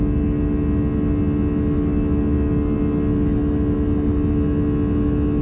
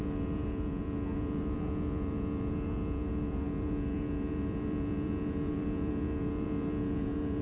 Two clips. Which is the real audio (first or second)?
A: first